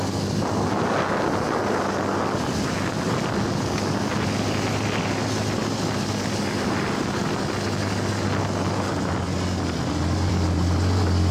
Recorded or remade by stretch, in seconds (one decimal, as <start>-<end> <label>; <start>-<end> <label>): 0.0-11.3 recorded